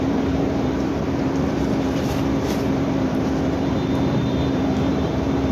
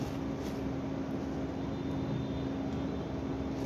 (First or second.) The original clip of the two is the second